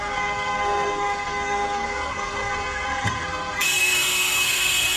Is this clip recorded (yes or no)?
no